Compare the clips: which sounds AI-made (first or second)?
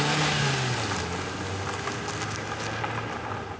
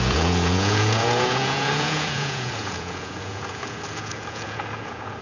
second